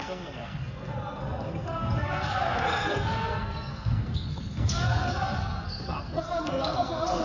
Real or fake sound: fake